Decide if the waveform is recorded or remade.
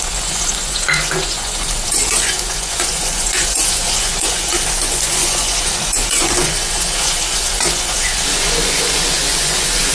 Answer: remade